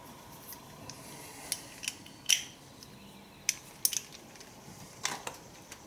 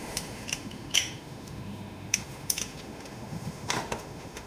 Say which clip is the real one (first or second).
first